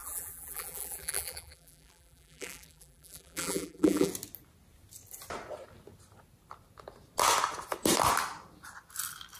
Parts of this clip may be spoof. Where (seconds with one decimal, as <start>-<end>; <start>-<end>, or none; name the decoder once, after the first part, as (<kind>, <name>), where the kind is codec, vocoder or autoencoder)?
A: 0.0-4.1 (vocoder, BigVGAN v2)